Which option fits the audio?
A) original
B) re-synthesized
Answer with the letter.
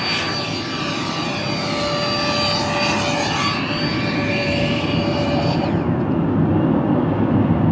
A